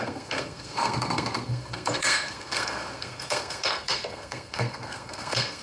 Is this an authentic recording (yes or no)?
no